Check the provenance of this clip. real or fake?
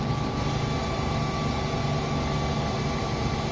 real